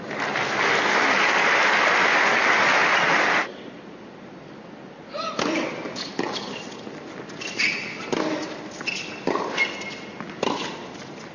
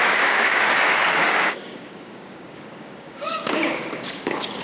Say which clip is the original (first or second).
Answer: first